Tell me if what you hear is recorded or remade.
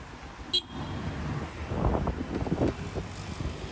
recorded